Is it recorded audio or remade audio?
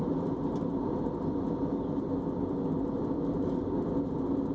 recorded